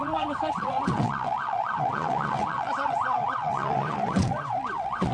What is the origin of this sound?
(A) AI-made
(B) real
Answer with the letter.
A